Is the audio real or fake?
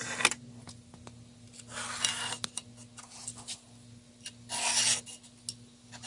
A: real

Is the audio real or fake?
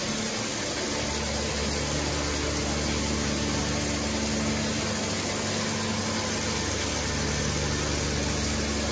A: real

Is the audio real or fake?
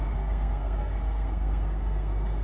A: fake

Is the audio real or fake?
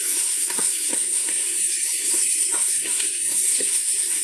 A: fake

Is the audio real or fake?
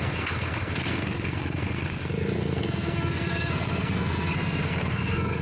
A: fake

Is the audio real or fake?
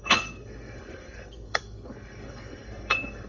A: fake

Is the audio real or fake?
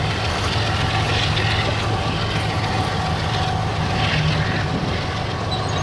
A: real